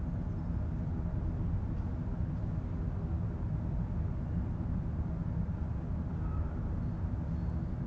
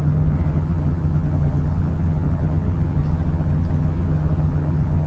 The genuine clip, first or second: first